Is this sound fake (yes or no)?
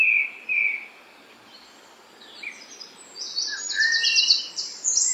yes